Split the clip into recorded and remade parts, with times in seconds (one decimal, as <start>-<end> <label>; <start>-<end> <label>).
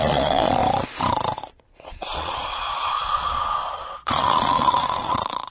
0.0-0.6 remade; 0.6-1.6 recorded; 1.6-5.5 remade